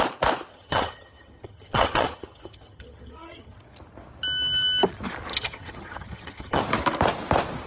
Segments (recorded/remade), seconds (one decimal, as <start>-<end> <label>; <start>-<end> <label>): 0.0-0.5 recorded; 0.5-3.6 remade; 3.6-5.3 recorded; 5.3-6.6 remade; 6.6-7.7 recorded